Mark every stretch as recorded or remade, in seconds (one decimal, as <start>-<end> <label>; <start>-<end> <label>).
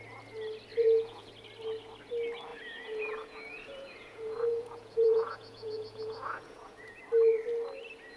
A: 0.0-0.7 recorded; 0.7-1.3 remade; 1.3-2.5 recorded; 2.5-7.0 remade; 7.0-8.2 recorded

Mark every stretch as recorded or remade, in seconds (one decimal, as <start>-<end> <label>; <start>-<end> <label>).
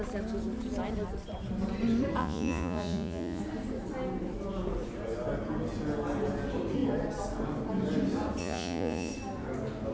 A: 0.0-2.2 recorded; 2.2-3.4 remade; 3.4-8.4 recorded; 8.4-9.1 remade; 9.1-9.9 recorded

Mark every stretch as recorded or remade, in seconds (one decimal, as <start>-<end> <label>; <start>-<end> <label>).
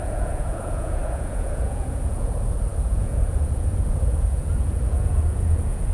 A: 0.0-5.9 remade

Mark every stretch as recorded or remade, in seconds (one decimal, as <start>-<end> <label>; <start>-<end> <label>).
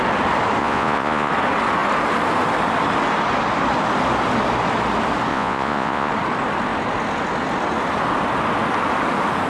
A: 0.0-0.6 recorded; 0.6-1.3 remade; 1.3-5.3 recorded; 5.3-6.1 remade; 6.1-9.5 recorded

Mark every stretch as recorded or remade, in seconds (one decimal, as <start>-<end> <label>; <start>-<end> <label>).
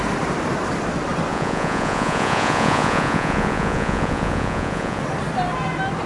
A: 0.0-1.3 recorded; 1.3-5.0 remade; 5.0-6.1 recorded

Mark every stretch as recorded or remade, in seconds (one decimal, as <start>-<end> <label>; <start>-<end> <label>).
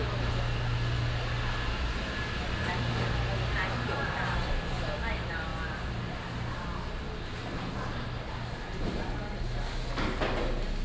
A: 0.0-10.8 recorded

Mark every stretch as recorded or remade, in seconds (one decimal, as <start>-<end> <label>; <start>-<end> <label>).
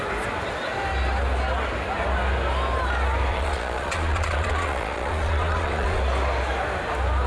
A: 0.0-3.3 recorded; 3.3-6.0 remade; 6.0-7.3 recorded